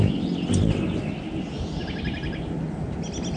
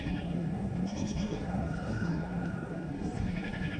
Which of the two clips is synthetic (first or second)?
second